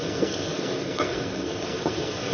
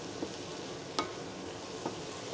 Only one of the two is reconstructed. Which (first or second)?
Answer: first